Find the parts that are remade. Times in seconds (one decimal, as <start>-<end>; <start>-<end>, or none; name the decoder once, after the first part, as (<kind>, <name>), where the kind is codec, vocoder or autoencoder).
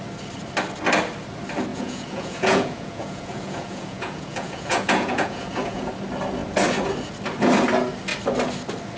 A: 1.7-5.9 (vocoder, Vocos)